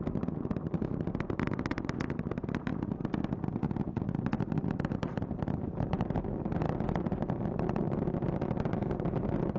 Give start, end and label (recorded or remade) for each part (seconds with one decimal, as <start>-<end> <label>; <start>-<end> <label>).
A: 0.0-9.6 recorded